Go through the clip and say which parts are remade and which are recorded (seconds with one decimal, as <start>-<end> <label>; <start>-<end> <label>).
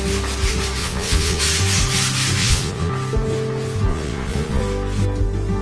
0.0-0.8 recorded; 0.8-1.4 remade; 1.4-2.4 recorded; 2.4-2.9 remade; 2.9-3.9 recorded; 3.9-4.6 remade; 4.6-5.6 recorded